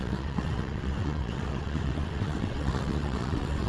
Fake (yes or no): yes